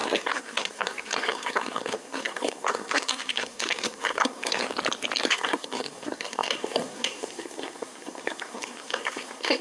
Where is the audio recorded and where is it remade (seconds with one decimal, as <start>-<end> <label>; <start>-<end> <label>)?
0.0-4.7 remade; 4.7-5.3 recorded; 5.3-9.6 remade